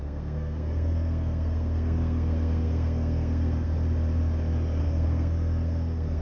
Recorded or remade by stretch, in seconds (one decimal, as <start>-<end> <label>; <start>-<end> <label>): 0.0-3.7 remade; 3.7-4.8 recorded; 4.8-6.2 remade